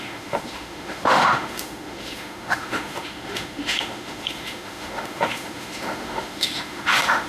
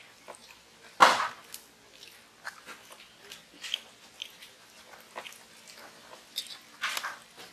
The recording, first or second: second